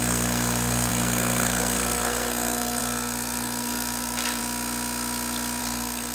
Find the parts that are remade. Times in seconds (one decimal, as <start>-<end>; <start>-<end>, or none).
0.0-4.4; 5.6-6.1